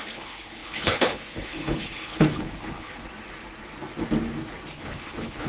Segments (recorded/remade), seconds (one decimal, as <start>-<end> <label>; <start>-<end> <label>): 0.0-3.1 remade; 3.1-4.8 recorded; 4.8-5.5 remade